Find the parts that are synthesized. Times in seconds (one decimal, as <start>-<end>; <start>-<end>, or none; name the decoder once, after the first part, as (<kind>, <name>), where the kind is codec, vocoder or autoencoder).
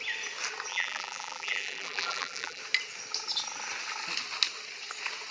0.7-2.6 (vocoder, BigVGAN v2)